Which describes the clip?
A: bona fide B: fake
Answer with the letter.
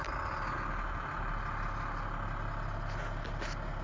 A